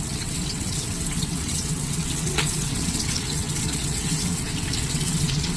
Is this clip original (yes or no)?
no